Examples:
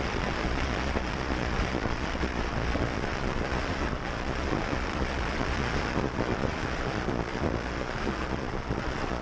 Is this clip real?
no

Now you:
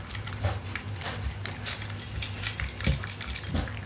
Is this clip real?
yes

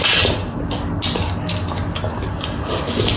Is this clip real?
yes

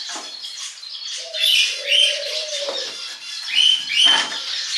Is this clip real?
no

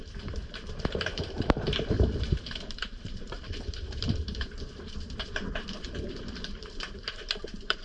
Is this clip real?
no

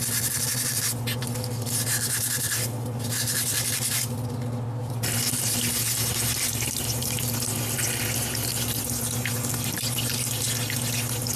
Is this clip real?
yes